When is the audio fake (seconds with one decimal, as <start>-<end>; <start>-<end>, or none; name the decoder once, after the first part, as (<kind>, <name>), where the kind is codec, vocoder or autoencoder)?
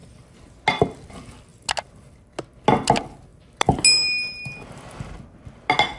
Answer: none